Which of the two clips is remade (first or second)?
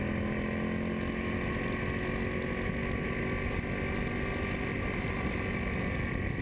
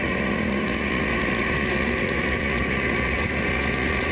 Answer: second